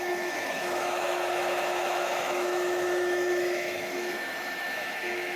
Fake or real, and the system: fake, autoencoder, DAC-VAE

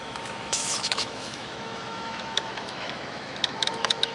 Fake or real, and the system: fake, autoencoder, DAC-VAE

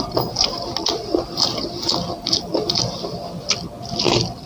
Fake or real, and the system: real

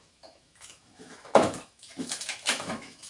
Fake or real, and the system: fake, autoencoder, DAC-VAE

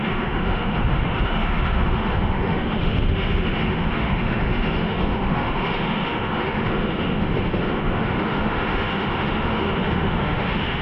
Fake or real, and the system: fake, autoencoder, DAC-VAE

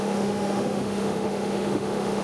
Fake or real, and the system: fake, autoencoder, DAC-VAE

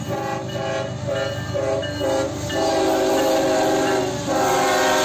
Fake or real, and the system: real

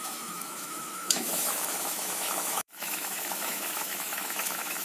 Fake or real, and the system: fake, autoencoder, DAC-VAE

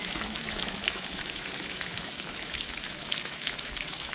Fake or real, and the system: fake, autoencoder, DAC-VAE